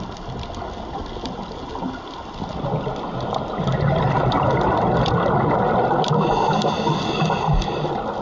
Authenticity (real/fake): real